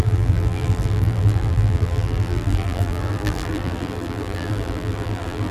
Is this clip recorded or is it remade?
remade